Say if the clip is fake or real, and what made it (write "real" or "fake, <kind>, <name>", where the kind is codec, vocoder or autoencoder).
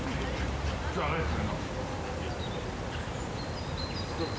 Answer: fake, vocoder, BigVGAN v2